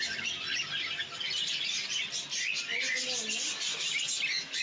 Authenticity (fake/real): real